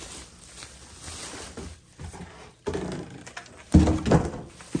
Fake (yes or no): no